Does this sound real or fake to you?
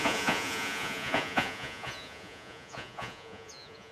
fake